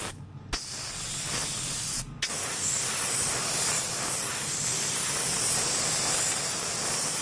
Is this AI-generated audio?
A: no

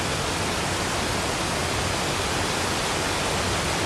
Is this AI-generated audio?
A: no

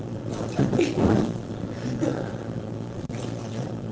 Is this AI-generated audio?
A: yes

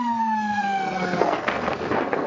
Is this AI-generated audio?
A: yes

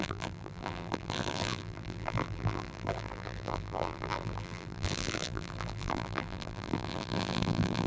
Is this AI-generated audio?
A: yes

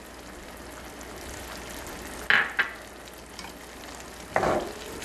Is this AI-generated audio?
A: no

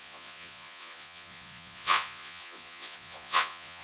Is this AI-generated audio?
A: yes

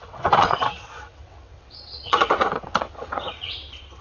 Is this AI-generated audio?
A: yes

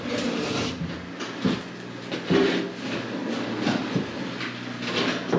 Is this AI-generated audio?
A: no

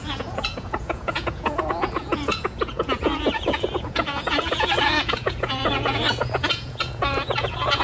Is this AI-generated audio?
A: yes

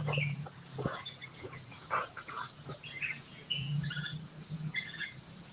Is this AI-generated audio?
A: yes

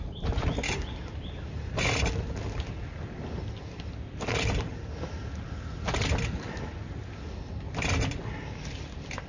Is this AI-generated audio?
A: no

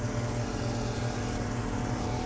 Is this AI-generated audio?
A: no